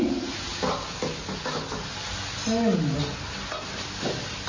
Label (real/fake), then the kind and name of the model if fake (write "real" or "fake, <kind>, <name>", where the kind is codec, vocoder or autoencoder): real